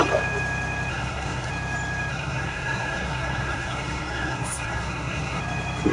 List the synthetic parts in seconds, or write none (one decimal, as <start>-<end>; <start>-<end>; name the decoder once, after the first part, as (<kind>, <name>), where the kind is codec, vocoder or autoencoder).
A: 0.9-1.5 (codec, SNAC); 2.1-5.4